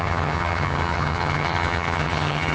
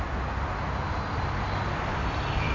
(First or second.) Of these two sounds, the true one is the second